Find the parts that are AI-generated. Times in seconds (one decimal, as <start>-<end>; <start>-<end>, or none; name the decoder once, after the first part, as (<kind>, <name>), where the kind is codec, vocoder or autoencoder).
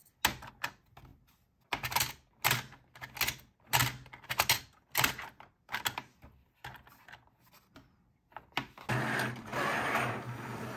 none